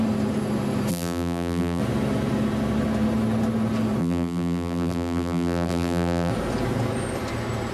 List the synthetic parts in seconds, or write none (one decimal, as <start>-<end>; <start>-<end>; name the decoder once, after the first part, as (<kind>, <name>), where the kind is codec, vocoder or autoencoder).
0.9-1.8 (vocoder, BigVGAN v2); 4.0-6.3

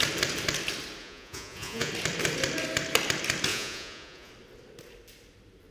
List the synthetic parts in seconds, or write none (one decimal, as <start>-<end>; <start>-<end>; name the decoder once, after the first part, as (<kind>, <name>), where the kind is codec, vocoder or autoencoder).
1.0-1.9 (vocoder, Vocos); 3.5-4.3

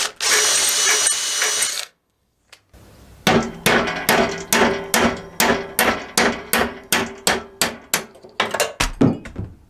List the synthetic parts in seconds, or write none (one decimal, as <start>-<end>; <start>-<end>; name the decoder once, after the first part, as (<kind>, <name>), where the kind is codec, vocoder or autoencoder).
1.7-2.4 (codec, SNAC)